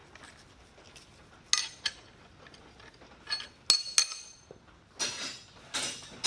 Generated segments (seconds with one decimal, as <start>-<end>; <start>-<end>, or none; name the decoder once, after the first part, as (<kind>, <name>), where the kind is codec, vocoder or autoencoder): none

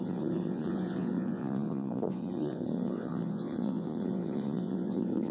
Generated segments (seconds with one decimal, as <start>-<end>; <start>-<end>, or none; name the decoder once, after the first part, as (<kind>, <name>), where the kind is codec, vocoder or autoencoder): 0.0-5.3 (vocoder, Vocos)

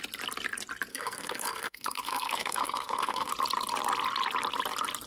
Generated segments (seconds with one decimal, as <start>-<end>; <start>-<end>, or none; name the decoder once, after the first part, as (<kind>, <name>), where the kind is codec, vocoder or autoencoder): 0.9-3.3 (codec, SNAC)

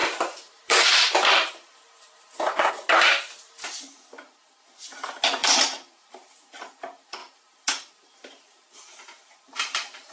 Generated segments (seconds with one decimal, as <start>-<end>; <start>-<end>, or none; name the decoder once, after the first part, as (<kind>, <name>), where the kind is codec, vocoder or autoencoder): 0.0-2.7 (vocoder, BigVGAN v2); 5.4-6.1

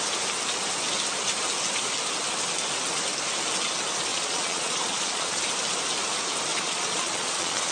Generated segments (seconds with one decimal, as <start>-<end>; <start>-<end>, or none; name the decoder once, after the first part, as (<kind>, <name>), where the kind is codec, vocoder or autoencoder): 4.1-5.4 (vocoder, Vocos); 6.5-7.7

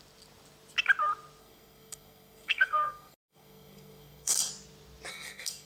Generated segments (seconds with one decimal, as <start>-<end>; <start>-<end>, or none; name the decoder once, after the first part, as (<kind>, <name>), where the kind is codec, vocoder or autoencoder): 1.4-4.5 (codec, SNAC); 5.1-5.7

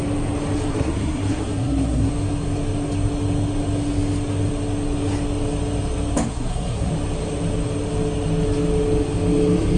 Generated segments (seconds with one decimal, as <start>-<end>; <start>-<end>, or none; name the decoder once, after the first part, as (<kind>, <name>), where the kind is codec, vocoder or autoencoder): 0.7-2.1 (codec, SNAC); 6.3-6.9